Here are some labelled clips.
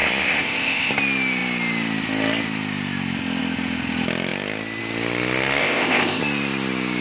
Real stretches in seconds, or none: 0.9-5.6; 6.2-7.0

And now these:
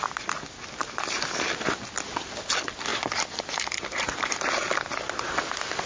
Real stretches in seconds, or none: 0.0-5.9

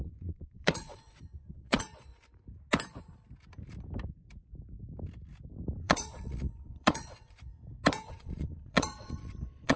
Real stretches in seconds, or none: 2.1-5.8; 7.5-8.1

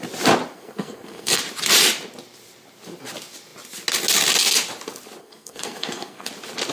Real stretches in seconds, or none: 0.0-0.5; 1.4-5.2; 6.3-6.7